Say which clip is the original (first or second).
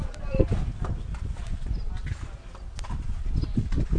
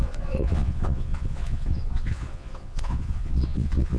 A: first